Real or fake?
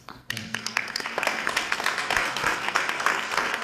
fake